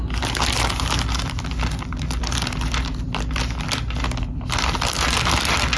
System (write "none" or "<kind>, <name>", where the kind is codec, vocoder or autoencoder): none